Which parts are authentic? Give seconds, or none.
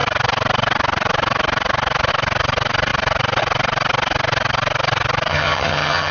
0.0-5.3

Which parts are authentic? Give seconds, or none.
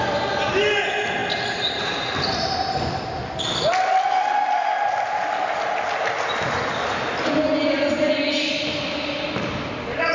0.0-10.1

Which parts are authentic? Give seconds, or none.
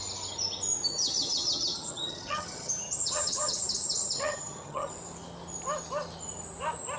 0.0-0.9; 4.9-7.0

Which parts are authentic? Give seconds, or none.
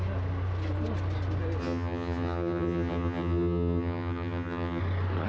0.0-1.6; 4.8-5.3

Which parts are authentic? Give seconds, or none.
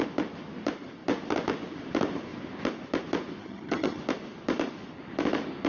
0.0-3.4; 4.0-5.7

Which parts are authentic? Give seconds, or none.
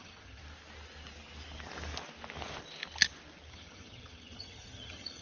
0.4-3.5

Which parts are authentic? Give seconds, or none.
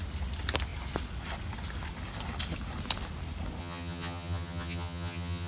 0.0-3.6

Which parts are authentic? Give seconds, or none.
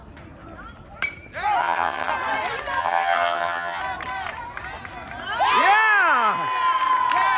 0.0-1.6; 2.1-2.8; 3.8-7.4